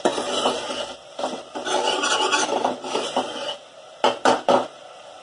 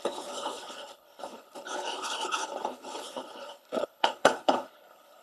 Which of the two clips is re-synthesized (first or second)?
second